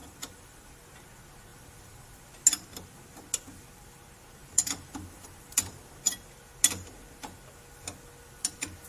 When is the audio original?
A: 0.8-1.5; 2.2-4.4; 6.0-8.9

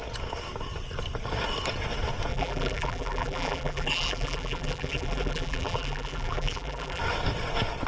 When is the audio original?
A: 0.0-2.3; 7.0-7.9

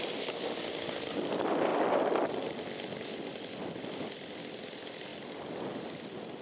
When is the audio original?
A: 0.0-1.7; 2.3-5.1

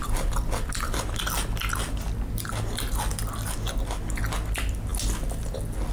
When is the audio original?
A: 1.2-5.9

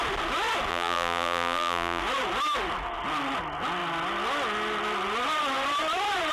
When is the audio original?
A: 0.0-0.7; 2.0-6.3

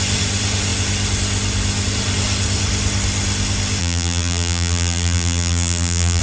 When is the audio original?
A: 0.0-3.8